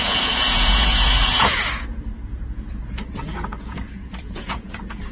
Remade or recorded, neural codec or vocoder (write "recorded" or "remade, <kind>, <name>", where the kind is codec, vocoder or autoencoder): remade, vocoder, Vocos